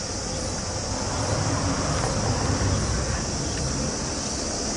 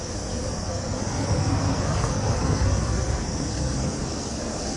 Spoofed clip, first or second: second